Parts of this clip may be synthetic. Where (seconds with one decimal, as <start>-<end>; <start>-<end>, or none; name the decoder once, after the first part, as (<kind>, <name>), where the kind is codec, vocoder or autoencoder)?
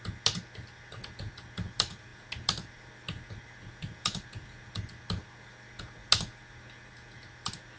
none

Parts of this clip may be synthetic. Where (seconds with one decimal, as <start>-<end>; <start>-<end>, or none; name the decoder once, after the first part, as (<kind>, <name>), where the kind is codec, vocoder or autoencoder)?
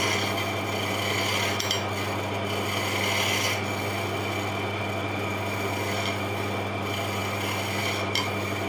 none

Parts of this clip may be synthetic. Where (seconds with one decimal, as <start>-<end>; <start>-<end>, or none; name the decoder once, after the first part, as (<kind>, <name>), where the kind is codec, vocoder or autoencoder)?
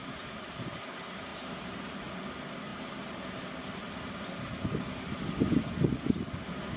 0.0-0.8 (vocoder, BigVGAN v2); 1.3-2.1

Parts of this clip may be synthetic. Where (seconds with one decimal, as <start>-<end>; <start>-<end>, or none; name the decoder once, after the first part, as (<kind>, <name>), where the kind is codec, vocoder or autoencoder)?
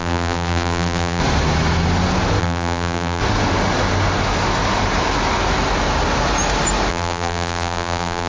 0.0-1.2 (vocoder, BigVGAN v2); 2.4-3.2; 6.9-8.3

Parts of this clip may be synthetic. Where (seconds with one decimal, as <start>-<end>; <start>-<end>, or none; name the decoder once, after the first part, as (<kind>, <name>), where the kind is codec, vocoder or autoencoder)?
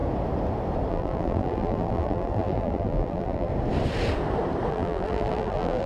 0.9-3.5 (vocoder, BigVGAN v2); 4.7-5.9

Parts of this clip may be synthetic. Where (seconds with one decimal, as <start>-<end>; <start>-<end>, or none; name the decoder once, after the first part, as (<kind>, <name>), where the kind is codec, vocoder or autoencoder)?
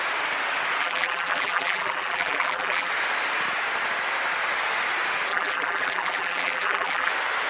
0.8-2.9 (vocoder, BigVGAN v2); 5.3-7.1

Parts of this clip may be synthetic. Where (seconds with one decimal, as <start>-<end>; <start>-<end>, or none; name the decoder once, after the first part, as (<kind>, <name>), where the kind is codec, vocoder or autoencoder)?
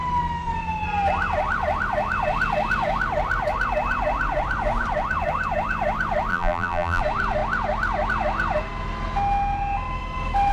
6.3-7.0 (vocoder, BigVGAN v2)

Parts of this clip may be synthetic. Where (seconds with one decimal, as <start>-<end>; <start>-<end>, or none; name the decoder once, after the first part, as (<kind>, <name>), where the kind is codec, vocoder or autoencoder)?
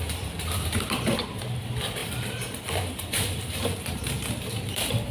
0.0-5.1 (vocoder, BigVGAN v2)